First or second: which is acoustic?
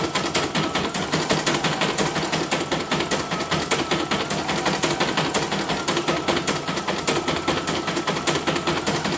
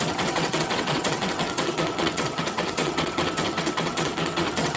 first